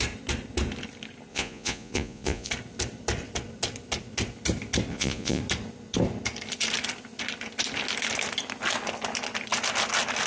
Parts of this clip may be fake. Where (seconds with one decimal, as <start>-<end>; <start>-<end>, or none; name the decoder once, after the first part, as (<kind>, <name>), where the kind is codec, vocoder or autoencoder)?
1.3-2.5 (vocoder, Vocos); 4.9-5.4